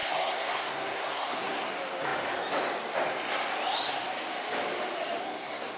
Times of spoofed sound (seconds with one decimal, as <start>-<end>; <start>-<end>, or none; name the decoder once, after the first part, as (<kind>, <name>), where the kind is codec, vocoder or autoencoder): 0.0-1.7 (codec, SNAC); 5.2-5.8